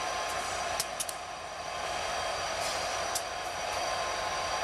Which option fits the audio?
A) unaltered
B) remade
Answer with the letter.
A